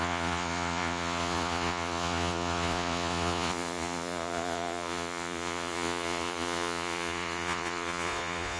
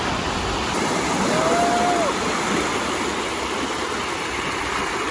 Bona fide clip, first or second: second